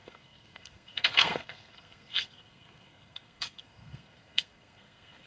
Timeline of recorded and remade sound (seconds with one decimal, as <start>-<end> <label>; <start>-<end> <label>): 0.0-5.3 remade